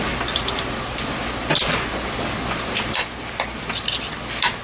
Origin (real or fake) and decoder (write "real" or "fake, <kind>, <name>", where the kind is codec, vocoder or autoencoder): real